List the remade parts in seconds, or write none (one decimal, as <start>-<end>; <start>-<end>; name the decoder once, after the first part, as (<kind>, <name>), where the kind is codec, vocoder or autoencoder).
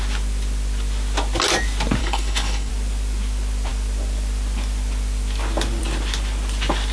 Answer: 2.0-2.7 (codec, HILCodec)